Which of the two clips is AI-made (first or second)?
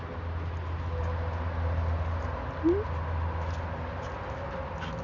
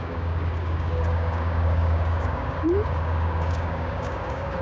second